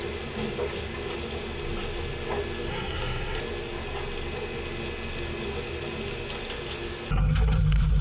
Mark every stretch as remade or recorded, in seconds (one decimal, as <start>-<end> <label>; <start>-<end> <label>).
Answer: 0.0-2.7 recorded; 2.7-3.4 remade; 3.4-8.0 recorded